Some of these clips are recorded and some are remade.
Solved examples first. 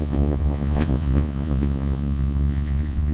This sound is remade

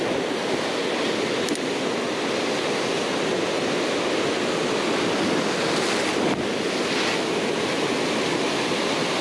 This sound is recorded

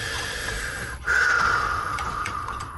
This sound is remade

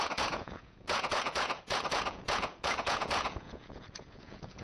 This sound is remade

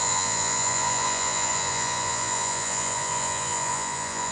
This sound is remade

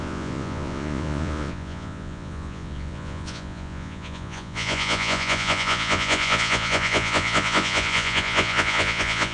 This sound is remade